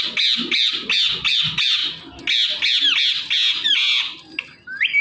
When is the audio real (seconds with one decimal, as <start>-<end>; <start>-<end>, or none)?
0.0-5.0